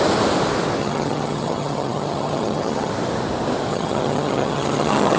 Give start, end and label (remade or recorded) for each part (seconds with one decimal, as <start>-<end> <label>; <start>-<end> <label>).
0.0-0.8 recorded; 0.8-2.9 remade; 2.9-3.7 recorded; 3.7-5.2 remade